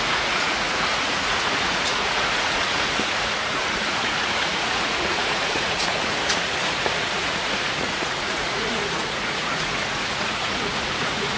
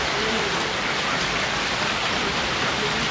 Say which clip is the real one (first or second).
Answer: second